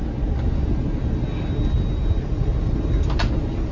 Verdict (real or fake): real